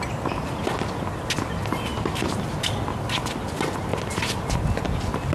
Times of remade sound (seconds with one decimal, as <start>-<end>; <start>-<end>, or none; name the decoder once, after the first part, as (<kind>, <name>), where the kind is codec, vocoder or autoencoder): 1.9-2.4 (vocoder, BigVGAN v2)